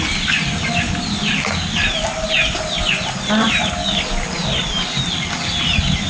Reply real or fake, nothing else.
real